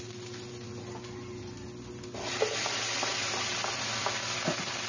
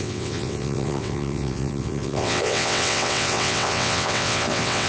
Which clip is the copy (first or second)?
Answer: second